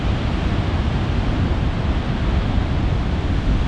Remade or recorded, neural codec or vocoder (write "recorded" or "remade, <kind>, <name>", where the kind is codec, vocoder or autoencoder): recorded